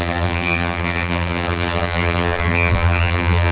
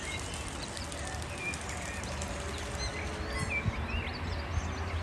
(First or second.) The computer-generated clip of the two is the first